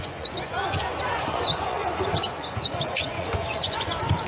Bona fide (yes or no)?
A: no